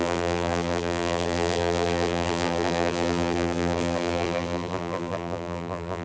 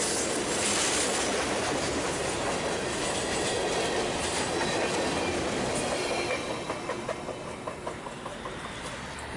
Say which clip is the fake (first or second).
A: first